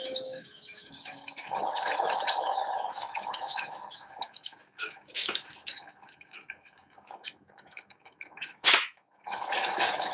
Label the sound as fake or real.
fake